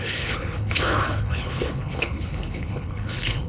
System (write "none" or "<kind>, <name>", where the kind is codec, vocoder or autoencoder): codec, HILCodec